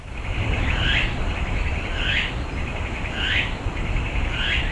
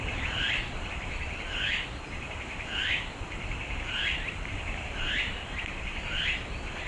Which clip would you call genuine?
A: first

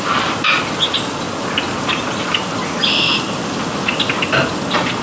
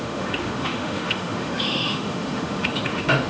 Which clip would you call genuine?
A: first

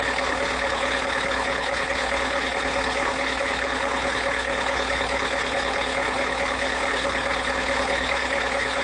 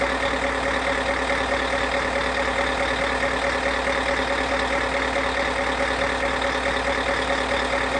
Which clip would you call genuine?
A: second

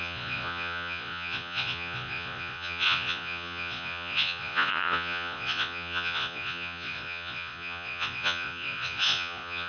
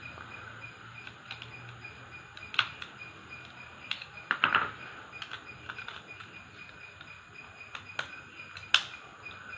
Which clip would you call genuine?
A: second